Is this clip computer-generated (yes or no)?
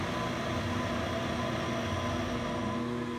no